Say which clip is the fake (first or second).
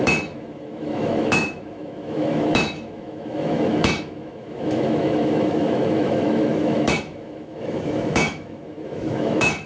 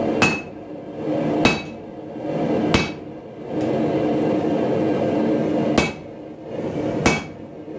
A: first